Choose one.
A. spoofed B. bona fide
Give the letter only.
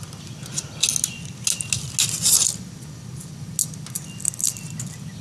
B